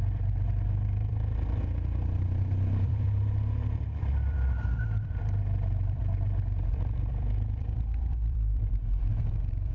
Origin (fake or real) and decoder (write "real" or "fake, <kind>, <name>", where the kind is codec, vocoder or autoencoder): fake, vocoder, BigVGAN v2